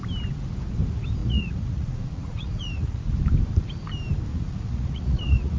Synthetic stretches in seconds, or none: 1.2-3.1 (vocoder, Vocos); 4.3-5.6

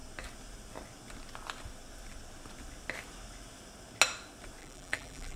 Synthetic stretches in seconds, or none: 4.6-5.4 (vocoder, BigVGAN v2)

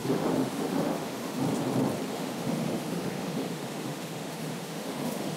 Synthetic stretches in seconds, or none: 0.0-1.4 (autoencoder, DAC-VAE); 2.1-5.4

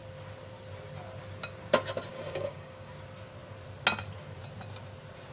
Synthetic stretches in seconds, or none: 2.1-2.9 (codec, DAC)

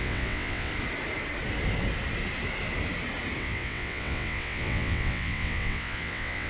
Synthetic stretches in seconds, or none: 0.0-0.7 (vocoder, WaveNeXt); 3.4-6.5

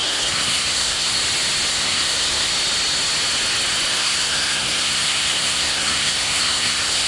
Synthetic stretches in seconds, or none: 0.0-1.2 (codec, SNAC); 1.7-2.5; 3.9-7.1

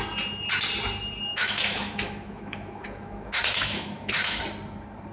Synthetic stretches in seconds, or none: 1.3-4.4 (autoencoder, DAC-VAE)